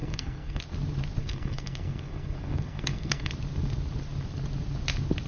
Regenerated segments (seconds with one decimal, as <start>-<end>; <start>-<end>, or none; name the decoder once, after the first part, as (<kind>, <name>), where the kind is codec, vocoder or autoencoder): 0.0-0.6 (codec, SNAC); 1.2-3.3